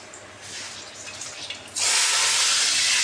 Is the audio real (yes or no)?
yes